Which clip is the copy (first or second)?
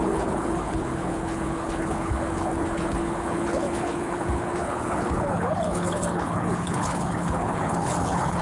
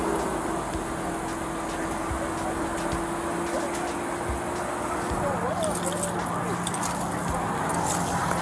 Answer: first